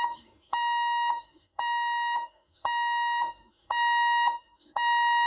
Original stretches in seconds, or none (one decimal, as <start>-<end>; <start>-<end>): none